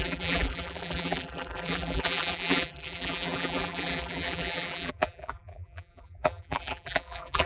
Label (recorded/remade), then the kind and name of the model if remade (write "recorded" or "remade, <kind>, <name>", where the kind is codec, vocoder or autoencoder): remade, vocoder, BigVGAN v2